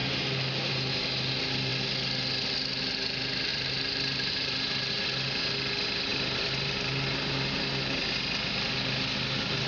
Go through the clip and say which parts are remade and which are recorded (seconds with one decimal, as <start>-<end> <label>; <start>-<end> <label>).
0.0-3.5 recorded; 3.5-4.3 remade; 4.3-6.1 recorded; 6.1-8.1 remade; 8.1-9.7 recorded